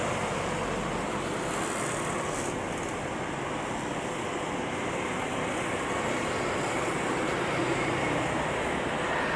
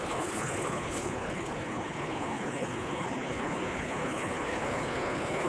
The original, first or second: first